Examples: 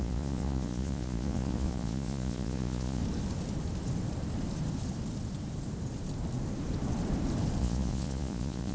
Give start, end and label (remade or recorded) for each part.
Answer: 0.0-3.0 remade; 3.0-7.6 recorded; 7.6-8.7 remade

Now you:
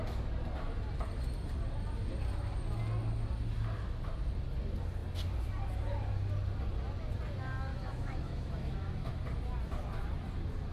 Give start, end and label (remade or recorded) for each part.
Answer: 0.0-7.7 recorded; 7.7-9.1 remade; 9.1-10.7 recorded